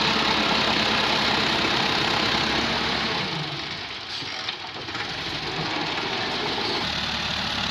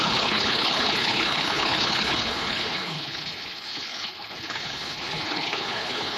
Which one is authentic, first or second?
first